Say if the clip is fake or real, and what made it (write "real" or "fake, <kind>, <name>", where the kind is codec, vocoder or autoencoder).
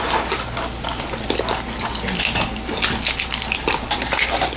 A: real